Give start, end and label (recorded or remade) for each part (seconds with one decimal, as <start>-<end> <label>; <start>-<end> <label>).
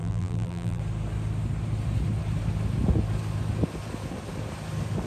0.0-0.8 remade; 0.8-5.1 recorded